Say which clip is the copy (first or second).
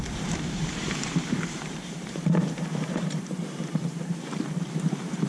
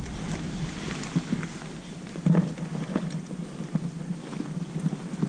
first